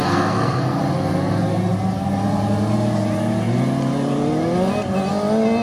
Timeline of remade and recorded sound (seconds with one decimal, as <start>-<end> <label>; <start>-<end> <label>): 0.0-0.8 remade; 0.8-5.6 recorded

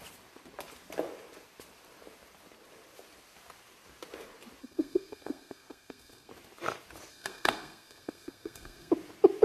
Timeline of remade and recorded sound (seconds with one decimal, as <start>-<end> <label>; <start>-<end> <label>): 0.0-4.6 recorded; 4.6-6.3 remade; 6.3-7.1 recorded; 7.1-8.9 remade; 8.9-9.4 recorded

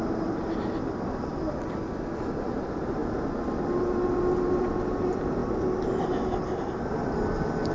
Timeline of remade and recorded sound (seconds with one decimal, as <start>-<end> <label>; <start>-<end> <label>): 0.0-7.7 recorded